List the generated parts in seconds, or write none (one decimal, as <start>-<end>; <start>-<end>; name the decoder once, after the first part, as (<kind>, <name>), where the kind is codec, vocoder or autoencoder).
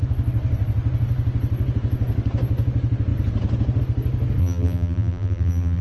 4.4-5.8 (vocoder, BigVGAN v2)